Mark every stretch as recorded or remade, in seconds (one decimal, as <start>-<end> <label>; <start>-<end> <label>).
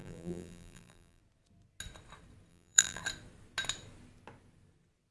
0.0-1.2 remade; 1.2-2.5 recorded; 2.5-3.0 remade; 3.0-5.1 recorded